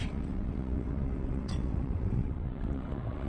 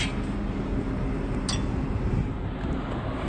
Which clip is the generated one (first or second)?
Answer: first